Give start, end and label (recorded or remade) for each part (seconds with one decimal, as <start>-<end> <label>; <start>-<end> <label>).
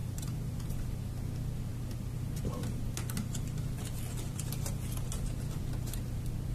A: 0.0-1.0 remade; 1.0-6.5 recorded